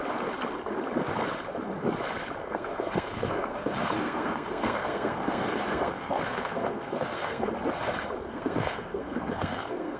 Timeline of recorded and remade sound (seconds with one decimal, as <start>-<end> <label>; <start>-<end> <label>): 0.0-2.4 recorded; 2.4-7.5 remade; 7.5-8.3 recorded; 8.3-10.0 remade